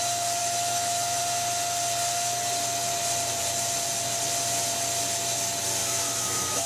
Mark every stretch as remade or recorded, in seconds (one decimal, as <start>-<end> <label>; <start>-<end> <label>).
0.0-0.4 recorded; 0.4-1.2 remade; 1.2-5.8 recorded; 5.8-6.7 remade